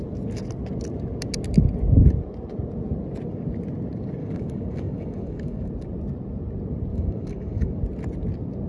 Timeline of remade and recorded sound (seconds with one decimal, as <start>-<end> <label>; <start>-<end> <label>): 0.0-4.2 recorded; 4.2-5.7 remade; 5.7-6.9 recorded; 6.9-7.8 remade; 7.8-8.7 recorded